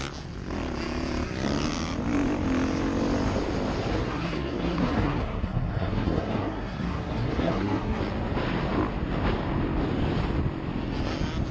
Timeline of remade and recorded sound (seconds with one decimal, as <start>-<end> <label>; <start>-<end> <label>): 0.0-3.9 recorded; 3.9-8.0 remade; 8.0-11.5 recorded